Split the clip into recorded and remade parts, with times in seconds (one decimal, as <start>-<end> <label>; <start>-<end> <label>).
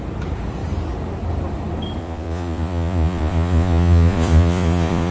0.0-2.0 recorded; 2.0-5.1 remade